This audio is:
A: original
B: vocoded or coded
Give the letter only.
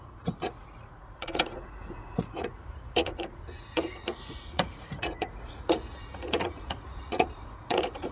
B